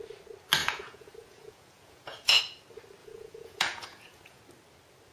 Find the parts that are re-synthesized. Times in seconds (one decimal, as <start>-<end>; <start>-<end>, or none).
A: 0.6-2.4; 3.0-4.4